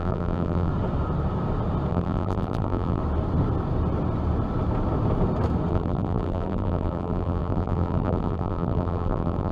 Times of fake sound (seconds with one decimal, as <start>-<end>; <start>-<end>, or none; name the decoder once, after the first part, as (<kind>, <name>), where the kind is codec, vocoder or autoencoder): 0.0-0.7 (vocoder, BigVGAN v2); 1.9-3.0; 5.7-9.5